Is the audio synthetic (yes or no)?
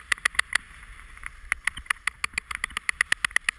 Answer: no